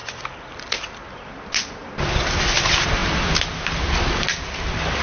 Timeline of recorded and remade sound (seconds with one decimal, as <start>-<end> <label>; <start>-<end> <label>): 0.0-5.0 recorded